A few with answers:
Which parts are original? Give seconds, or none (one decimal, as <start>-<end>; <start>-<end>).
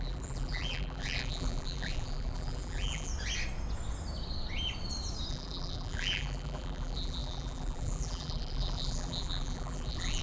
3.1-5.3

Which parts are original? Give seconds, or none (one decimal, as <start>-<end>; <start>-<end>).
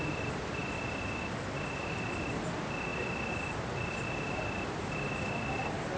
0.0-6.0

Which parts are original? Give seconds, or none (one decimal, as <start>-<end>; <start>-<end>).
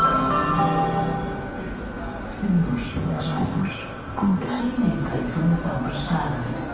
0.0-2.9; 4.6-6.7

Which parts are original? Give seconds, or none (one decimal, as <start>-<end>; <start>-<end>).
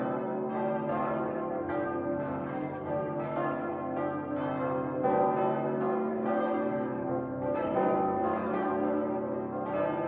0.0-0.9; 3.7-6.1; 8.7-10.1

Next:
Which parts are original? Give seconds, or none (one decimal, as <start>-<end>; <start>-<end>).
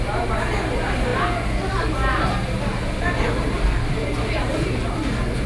0.0-5.5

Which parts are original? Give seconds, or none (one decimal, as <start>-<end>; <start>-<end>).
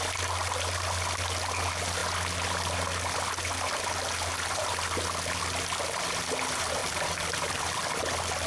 0.0-6.8; 8.0-8.5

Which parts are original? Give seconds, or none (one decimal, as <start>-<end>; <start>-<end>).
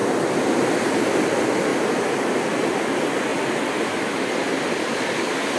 0.0-5.6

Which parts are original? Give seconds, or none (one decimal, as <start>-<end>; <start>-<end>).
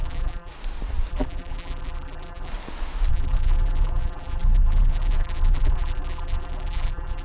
0.5-1.1; 2.5-3.1